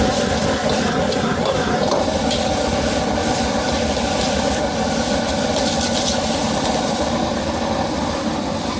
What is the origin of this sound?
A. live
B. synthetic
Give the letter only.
A